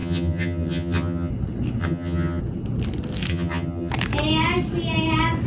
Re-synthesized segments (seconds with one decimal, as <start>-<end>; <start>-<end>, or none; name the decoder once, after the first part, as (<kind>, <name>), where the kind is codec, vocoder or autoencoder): 0.0-1.3 (vocoder, HiFi-GAN); 1.8-2.4; 3.3-3.9